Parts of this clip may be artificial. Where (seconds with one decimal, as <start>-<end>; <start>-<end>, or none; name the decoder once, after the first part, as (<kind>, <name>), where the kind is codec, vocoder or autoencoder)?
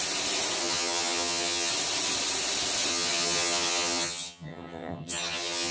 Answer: 0.6-1.7 (vocoder, HiFi-GAN); 2.9-5.7